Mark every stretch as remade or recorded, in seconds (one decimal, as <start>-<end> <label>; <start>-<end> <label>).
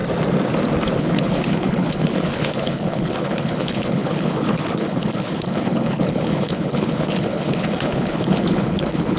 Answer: 0.0-1.0 recorded; 1.0-9.2 remade